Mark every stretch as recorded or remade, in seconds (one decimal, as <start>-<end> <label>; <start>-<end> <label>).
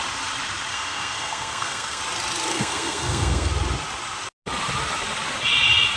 0.0-0.7 recorded; 0.7-2.0 remade; 2.0-2.5 recorded; 2.5-3.5 remade; 3.5-6.0 recorded